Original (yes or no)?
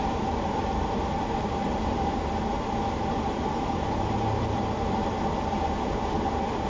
no